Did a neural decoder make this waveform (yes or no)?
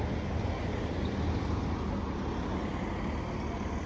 no